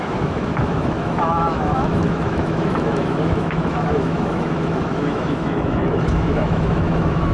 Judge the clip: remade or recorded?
remade